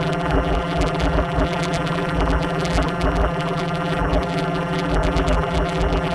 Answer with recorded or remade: remade